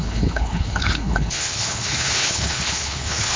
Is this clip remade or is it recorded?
remade